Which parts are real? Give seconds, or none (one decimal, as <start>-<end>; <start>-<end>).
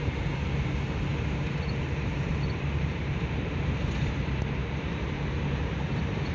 none